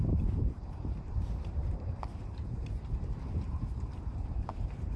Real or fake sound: fake